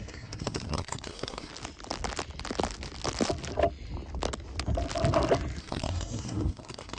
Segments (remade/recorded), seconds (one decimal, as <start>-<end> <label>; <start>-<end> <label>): 0.0-1.5 remade; 1.5-5.6 recorded; 5.6-7.0 remade